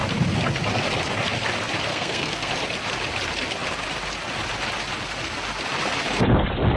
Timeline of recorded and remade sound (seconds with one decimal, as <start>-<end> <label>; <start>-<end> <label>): 0.0-1.9 recorded; 1.9-2.5 remade; 2.5-6.8 recorded